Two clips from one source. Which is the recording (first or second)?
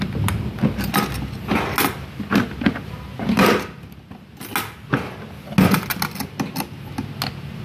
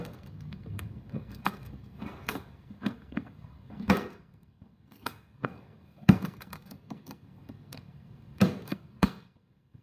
first